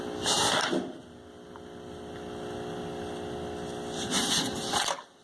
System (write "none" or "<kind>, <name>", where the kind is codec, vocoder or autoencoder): none